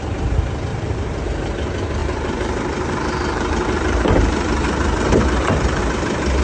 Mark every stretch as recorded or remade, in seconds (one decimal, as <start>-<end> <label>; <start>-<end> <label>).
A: 0.0-0.7 recorded; 0.7-1.2 remade; 1.2-2.0 recorded; 2.0-5.8 remade; 5.8-6.4 recorded